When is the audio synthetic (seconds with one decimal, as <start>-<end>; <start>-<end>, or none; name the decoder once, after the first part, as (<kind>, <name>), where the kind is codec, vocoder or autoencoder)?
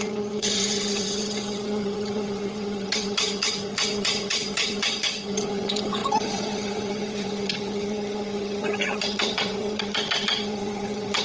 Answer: 0.0-11.2 (vocoder, HiFi-GAN)